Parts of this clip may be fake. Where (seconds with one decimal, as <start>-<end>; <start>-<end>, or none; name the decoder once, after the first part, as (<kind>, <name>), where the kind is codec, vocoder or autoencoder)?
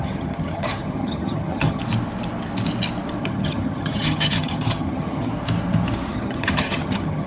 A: 0.0-1.8 (vocoder, HiFi-GAN); 3.2-5.3; 6.1-7.3